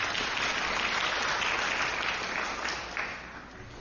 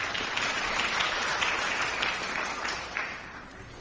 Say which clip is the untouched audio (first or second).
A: first